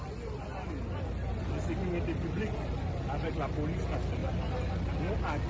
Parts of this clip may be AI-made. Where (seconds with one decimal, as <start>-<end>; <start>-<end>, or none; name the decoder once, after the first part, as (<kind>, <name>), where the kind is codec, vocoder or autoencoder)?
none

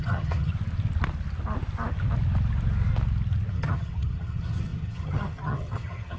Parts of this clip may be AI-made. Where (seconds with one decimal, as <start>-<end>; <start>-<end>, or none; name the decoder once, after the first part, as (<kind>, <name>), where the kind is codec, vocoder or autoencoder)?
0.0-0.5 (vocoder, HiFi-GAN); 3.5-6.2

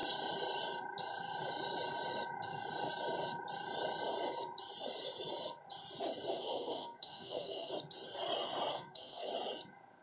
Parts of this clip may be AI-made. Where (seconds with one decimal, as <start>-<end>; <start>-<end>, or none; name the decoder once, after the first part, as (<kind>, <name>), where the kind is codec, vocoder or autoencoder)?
6.3-7.7 (codec, SNAC); 8.7-9.3

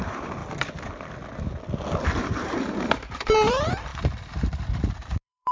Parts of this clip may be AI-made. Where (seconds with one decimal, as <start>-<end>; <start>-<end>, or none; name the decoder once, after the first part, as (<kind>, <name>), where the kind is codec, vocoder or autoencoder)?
0.0-0.4 (vocoder, BigVGAN v2); 2.2-5.5